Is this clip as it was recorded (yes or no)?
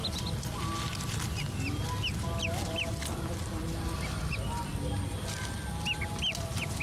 yes